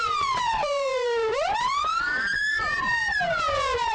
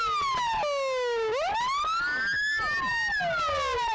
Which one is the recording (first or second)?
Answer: second